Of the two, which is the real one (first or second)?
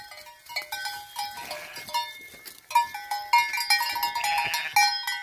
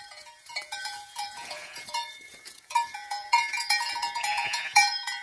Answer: first